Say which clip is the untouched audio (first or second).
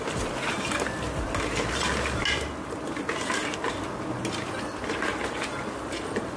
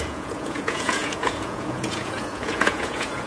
first